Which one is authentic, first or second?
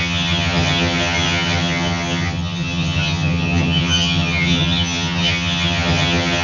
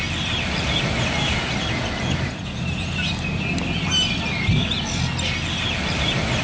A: second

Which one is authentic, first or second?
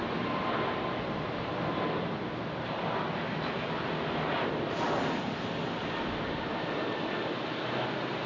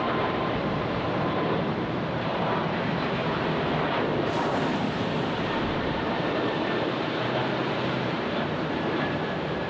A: first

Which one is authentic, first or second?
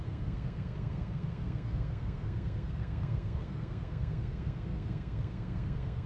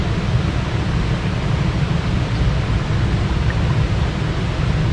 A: second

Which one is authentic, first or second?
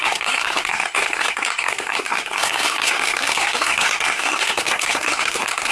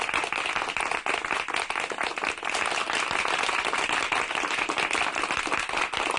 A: second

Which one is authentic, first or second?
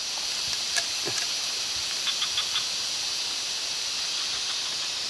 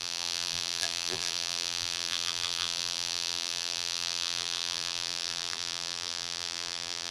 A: first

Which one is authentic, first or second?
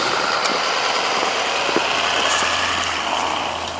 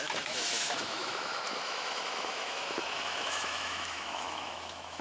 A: first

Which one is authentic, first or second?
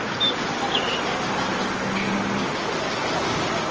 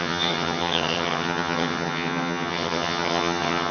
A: first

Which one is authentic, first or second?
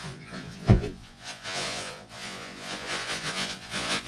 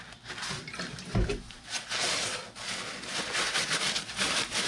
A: second